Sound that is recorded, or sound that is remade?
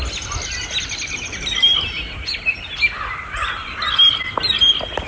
recorded